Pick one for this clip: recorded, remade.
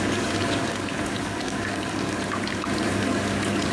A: remade